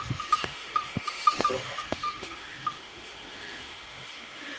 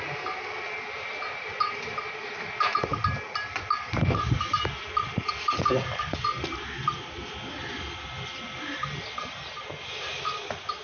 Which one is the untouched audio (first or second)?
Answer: second